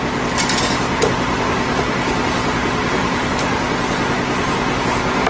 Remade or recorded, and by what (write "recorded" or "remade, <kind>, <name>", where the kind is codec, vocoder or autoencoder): recorded